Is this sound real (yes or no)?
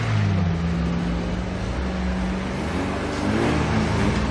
yes